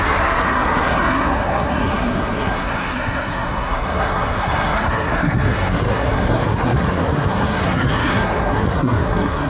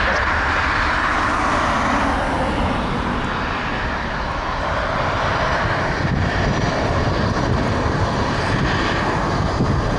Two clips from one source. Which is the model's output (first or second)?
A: first